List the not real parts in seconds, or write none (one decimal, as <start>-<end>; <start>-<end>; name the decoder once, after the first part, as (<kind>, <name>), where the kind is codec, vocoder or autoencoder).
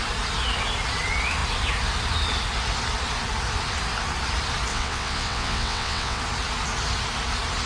4.7-6.2 (vocoder, WaveNeXt)